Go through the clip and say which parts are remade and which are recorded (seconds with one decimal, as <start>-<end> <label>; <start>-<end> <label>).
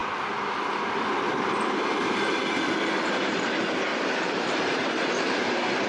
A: 0.0-3.9 recorded; 3.9-5.4 remade; 5.4-5.9 recorded